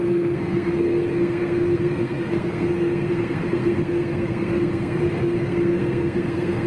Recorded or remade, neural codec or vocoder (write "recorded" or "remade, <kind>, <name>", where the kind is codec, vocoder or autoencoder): remade, codec, SNAC